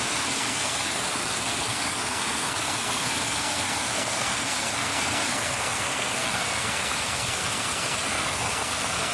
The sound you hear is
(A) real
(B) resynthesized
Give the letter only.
B